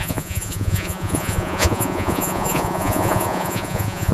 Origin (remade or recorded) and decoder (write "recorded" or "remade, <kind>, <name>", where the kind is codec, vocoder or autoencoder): remade, vocoder, Vocos